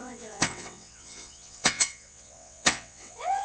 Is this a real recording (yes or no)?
no